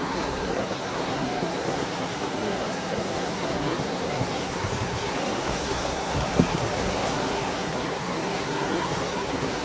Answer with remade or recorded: remade